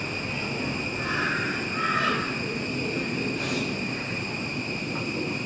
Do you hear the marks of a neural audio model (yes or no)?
no